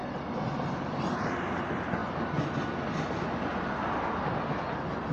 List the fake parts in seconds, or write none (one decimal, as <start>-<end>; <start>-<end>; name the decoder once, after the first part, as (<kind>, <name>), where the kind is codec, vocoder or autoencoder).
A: none